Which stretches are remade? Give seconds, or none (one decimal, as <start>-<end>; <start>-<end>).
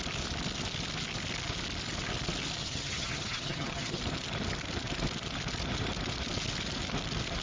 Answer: 2.6-4.0